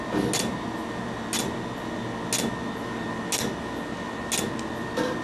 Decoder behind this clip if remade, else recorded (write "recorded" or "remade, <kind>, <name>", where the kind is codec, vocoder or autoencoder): recorded